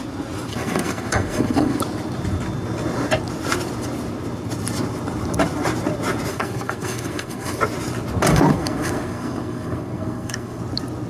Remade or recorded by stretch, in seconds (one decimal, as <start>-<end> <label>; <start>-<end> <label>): 0.0-0.5 recorded; 0.5-1.8 remade; 1.8-6.3 recorded; 6.3-7.6 remade; 7.6-8.3 recorded; 8.3-10.6 remade; 10.6-11.1 recorded